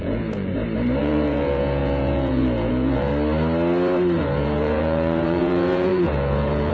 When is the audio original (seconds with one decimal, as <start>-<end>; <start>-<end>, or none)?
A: 0.5-1.0; 3.1-4.2